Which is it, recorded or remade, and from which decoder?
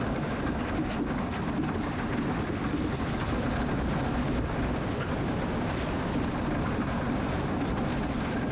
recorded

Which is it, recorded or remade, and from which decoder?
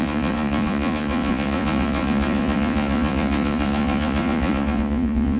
remade, vocoder, Vocos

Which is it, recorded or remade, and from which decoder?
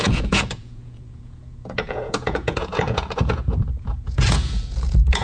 remade, vocoder, Vocos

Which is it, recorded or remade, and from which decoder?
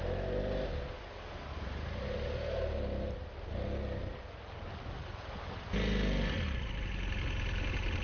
recorded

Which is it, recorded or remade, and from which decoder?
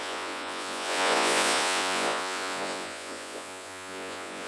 remade, vocoder, Vocos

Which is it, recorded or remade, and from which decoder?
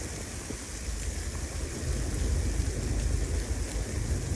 recorded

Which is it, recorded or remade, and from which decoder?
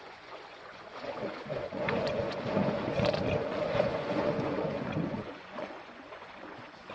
remade, vocoder, Vocos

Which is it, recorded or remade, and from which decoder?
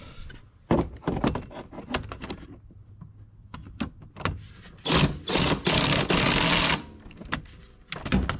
recorded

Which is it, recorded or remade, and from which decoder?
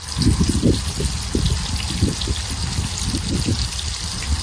recorded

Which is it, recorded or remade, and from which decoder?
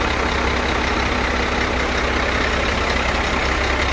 recorded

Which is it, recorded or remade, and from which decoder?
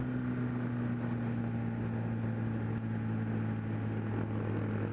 recorded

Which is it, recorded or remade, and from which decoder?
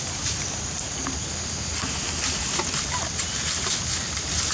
recorded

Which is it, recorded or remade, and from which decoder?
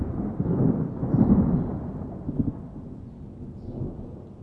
recorded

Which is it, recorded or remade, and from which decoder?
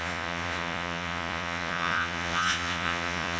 remade, vocoder, Vocos